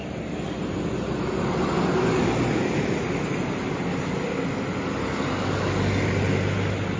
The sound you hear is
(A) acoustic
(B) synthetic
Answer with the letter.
A